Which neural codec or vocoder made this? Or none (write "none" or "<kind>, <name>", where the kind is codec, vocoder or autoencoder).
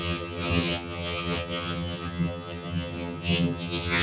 vocoder, HiFi-GAN